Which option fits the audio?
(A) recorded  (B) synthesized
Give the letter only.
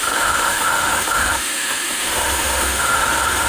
B